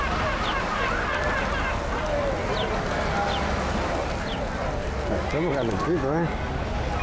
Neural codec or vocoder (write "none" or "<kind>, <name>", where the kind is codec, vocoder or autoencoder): none